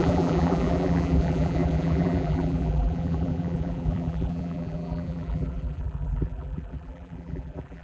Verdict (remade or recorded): remade